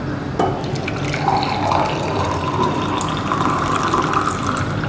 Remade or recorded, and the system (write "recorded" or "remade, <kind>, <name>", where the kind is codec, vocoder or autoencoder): recorded